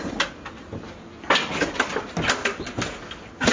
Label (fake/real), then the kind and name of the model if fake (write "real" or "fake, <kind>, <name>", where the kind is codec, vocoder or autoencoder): real